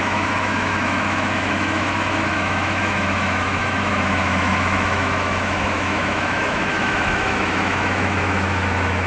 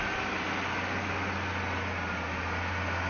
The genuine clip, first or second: second